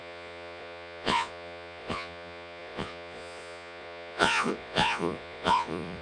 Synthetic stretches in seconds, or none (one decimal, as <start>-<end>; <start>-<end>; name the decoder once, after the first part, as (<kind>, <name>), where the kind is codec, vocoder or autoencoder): 0.0-6.0 (vocoder, Vocos)